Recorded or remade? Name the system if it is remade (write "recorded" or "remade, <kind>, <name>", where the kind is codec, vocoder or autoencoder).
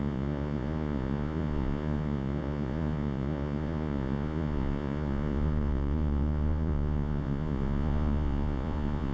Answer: remade, vocoder, Vocos